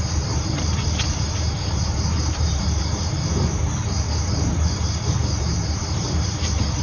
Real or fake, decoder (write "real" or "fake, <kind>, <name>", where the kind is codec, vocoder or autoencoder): fake, vocoder, BigVGAN v2